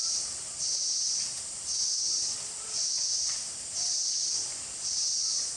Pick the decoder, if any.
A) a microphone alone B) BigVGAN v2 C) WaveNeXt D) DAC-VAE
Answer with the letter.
A